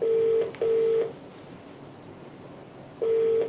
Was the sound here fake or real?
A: real